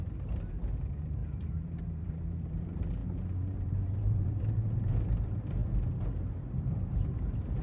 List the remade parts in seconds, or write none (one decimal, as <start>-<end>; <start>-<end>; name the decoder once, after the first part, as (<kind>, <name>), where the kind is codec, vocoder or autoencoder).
0.0-7.6 (vocoder, BigVGAN v2)